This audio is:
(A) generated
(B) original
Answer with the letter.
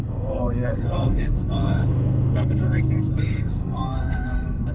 A